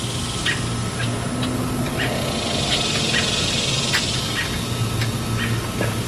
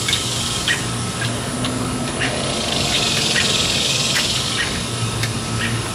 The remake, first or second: second